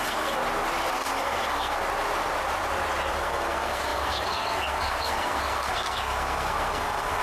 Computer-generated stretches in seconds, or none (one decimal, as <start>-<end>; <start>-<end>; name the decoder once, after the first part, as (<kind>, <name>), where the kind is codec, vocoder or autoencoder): 0.0-0.4 (codec, SNAC); 0.9-1.8; 3.1-7.2